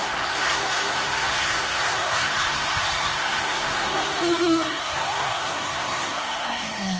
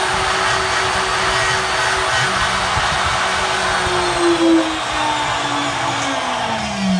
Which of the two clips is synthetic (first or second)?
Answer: first